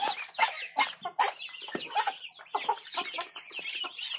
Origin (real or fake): real